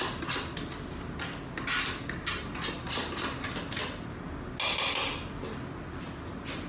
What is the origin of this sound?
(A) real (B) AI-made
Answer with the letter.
A